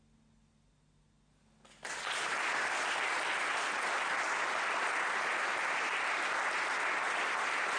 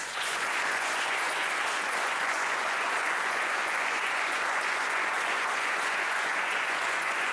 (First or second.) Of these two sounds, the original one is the first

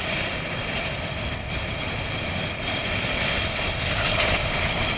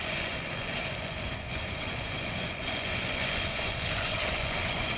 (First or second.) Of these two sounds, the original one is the first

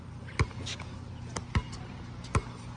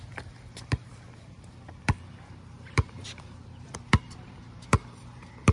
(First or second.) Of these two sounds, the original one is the first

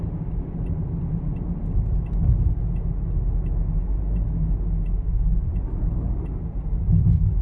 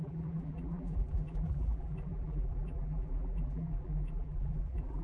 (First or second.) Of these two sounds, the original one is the first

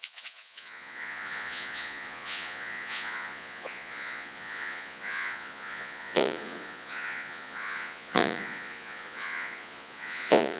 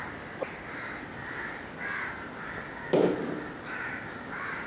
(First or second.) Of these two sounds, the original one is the second